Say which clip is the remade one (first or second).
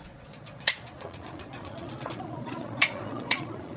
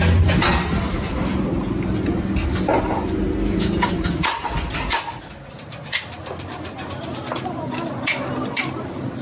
first